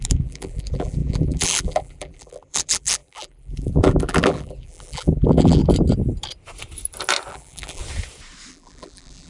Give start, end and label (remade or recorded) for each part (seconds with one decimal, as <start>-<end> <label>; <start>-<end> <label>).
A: 0.0-5.6 remade; 5.6-7.3 recorded; 7.3-7.8 remade; 7.8-8.5 recorded; 8.5-9.3 remade